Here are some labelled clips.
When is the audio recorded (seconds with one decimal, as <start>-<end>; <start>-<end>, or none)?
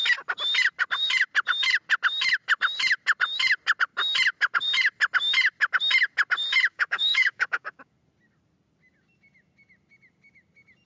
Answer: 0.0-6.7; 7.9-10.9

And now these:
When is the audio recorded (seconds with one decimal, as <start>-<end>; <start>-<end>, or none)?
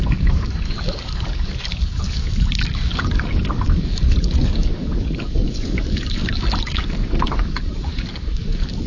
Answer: none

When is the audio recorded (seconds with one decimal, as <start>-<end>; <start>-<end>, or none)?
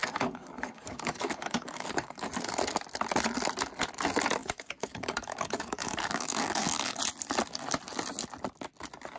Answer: 2.3-4.4; 7.0-9.2